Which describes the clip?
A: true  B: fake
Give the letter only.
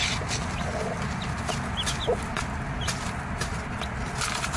A